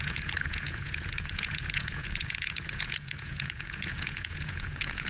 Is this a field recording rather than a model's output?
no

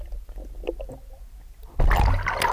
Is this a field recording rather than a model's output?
yes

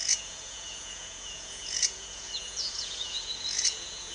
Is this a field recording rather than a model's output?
no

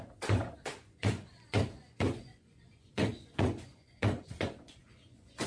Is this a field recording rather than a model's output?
no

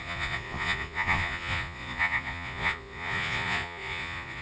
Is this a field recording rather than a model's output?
no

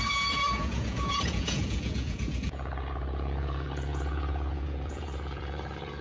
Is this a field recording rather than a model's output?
no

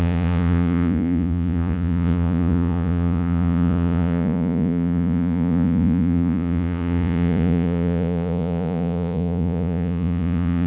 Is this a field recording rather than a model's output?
no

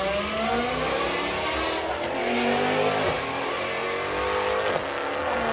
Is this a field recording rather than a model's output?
yes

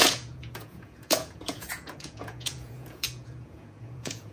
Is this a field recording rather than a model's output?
no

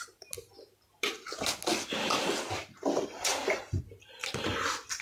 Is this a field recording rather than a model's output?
yes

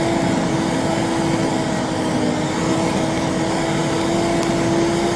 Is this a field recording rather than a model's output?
yes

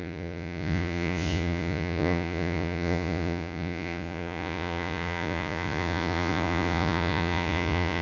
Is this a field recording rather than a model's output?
no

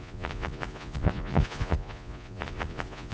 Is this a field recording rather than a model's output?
no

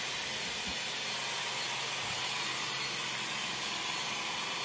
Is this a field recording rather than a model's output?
yes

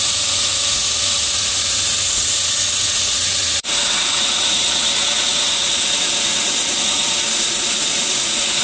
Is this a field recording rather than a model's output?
no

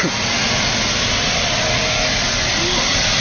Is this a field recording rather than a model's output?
yes